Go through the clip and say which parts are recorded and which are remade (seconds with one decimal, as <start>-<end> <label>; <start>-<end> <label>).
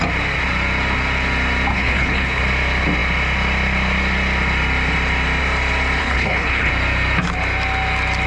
0.0-1.7 recorded; 1.7-2.4 remade; 2.4-6.0 recorded; 6.0-6.7 remade; 6.7-8.3 recorded